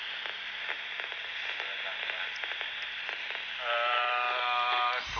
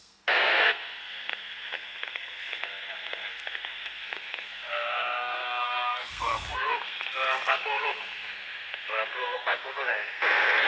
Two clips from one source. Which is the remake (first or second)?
second